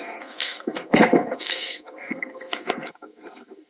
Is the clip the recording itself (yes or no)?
no